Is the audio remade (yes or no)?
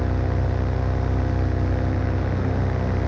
no